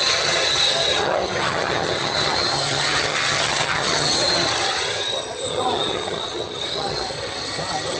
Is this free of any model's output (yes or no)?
no